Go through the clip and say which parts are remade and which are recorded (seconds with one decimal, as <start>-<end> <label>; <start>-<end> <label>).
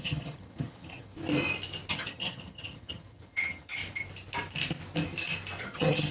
0.0-1.1 remade; 1.1-1.9 recorded; 1.9-3.8 remade; 3.8-5.6 recorded; 5.6-6.1 remade